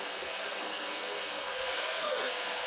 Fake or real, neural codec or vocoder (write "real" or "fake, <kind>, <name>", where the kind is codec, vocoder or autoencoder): fake, codec, SNAC